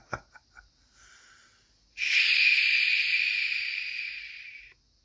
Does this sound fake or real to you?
real